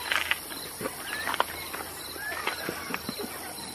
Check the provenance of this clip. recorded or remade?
recorded